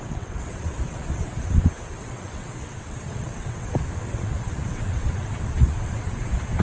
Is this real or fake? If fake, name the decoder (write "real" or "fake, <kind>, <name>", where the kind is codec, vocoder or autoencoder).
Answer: fake, vocoder, WaveNeXt